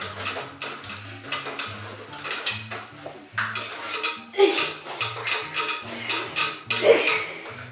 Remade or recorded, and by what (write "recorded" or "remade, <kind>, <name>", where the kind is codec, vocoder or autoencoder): recorded